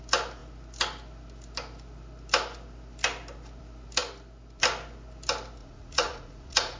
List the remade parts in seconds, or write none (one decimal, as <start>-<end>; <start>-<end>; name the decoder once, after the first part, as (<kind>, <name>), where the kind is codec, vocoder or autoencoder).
5.6-6.8 (vocoder, Vocos)

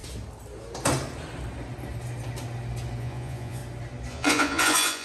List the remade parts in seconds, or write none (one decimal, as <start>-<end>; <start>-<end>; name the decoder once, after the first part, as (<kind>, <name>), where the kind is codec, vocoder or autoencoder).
3.0-3.6 (vocoder, Vocos); 4.1-5.0

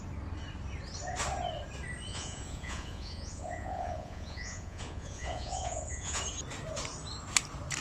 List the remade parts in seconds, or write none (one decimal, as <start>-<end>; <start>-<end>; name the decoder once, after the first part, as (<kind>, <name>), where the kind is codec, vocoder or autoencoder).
2.1-6.2 (vocoder, Vocos)

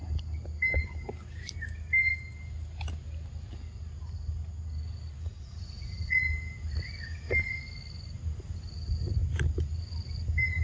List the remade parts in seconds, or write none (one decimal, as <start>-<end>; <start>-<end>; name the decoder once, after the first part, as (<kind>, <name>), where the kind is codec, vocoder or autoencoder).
5.2-6.2 (vocoder, Vocos)

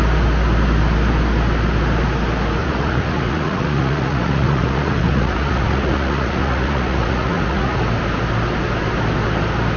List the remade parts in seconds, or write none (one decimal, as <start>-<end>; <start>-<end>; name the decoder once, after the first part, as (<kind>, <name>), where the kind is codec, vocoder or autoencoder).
2.6-7.8 (vocoder, Vocos)